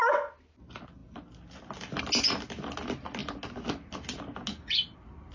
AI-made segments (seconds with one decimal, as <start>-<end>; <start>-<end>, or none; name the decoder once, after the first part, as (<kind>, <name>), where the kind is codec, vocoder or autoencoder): none